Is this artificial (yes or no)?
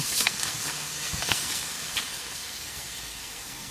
yes